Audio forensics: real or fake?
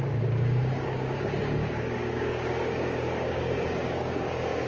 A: fake